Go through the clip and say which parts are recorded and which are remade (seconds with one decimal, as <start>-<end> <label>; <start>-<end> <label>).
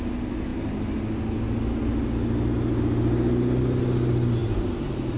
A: 0.0-5.2 recorded